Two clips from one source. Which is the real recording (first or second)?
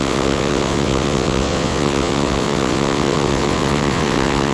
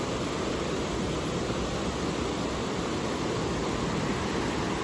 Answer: second